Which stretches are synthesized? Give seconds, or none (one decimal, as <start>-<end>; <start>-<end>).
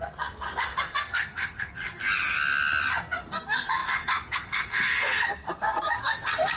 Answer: 0.0-2.0; 2.9-6.6